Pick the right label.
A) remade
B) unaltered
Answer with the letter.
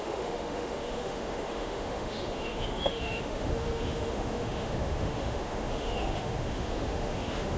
A